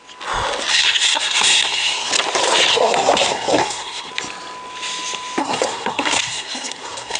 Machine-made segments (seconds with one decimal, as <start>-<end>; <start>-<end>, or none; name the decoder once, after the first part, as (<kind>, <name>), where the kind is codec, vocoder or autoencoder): 0.7-2.1 (codec, SNAC); 2.7-4.1; 5.4-7.2